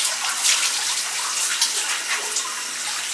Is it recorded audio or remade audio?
recorded